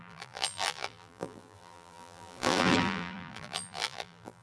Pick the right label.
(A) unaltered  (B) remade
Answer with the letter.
B